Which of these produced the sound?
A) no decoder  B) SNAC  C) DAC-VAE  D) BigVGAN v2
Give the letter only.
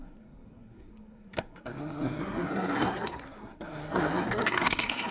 B